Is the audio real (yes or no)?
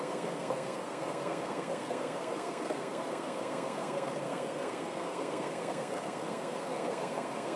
no